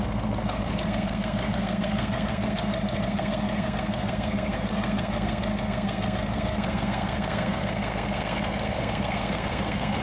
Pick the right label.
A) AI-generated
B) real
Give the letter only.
A